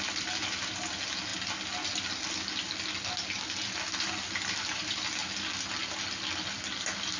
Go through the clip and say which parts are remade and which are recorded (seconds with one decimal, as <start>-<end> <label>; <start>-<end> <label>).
0.0-7.2 recorded